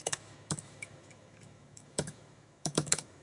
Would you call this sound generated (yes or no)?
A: yes